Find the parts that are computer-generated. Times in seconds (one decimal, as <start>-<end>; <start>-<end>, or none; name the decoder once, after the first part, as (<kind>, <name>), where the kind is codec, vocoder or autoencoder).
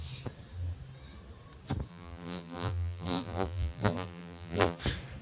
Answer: 1.9-4.8 (vocoder, BigVGAN v2)